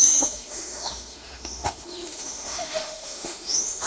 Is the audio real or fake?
fake